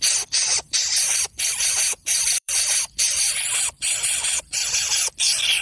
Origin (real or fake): fake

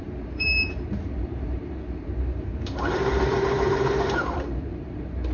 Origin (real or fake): fake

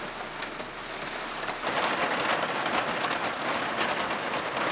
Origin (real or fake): real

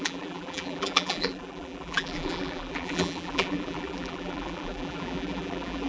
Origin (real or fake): fake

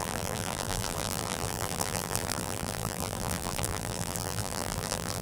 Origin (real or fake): fake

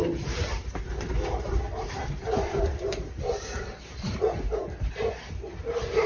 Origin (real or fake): fake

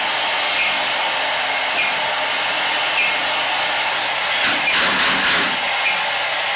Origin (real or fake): real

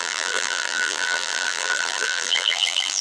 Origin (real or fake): fake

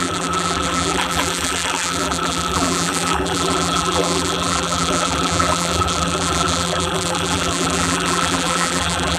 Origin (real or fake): fake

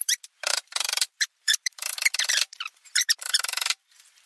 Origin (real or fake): fake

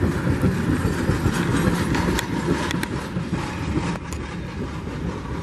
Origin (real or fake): real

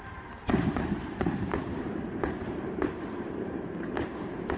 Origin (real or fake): fake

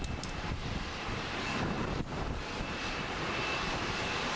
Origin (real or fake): fake